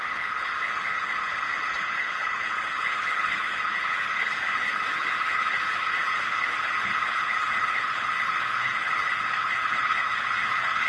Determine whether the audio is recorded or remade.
remade